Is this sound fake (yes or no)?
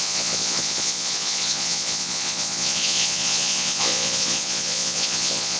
yes